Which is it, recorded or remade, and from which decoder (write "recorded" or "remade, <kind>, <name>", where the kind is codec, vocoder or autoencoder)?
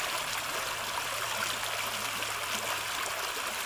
recorded